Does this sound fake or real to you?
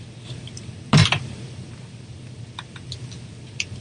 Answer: real